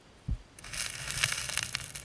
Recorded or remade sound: remade